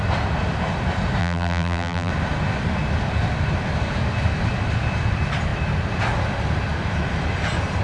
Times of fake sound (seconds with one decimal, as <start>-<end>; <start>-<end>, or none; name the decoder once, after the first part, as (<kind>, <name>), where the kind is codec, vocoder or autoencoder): 1.2-2.1 (vocoder, BigVGAN v2)